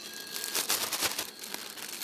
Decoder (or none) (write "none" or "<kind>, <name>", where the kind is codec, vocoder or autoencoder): none